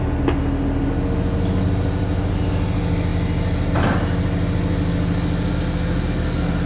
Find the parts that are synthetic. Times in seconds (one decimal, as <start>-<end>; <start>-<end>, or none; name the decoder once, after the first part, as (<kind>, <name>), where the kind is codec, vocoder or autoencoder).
none